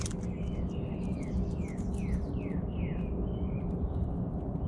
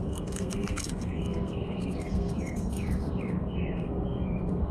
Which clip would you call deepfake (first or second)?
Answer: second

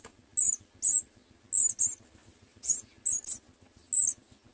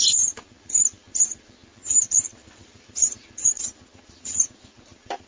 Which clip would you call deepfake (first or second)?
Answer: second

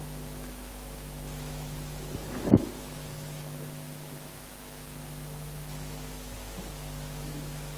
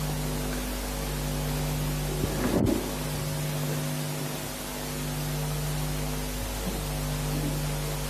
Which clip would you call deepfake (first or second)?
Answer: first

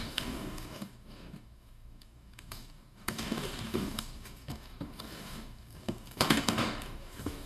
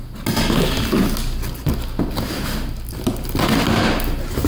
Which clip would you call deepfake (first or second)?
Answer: first